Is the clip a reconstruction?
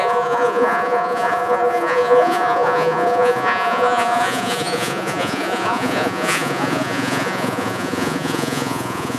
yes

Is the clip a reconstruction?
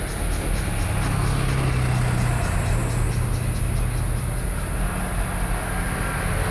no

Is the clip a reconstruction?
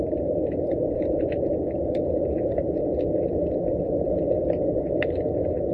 no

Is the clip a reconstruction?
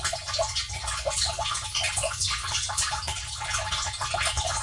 yes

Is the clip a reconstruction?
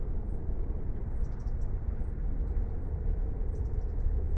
no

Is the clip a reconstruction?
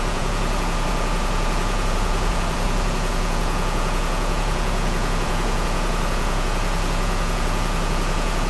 yes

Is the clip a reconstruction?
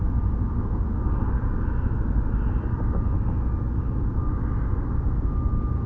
no